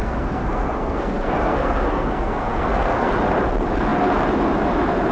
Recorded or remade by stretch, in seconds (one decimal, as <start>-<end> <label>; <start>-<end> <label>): 0.0-3.1 remade; 3.1-5.1 recorded